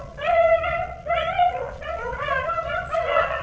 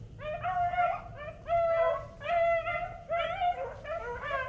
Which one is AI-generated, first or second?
first